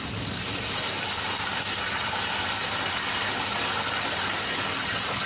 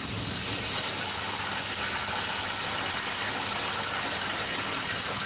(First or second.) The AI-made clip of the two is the first